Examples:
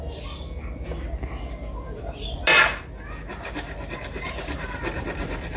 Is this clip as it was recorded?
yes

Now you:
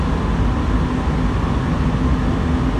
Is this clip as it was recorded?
yes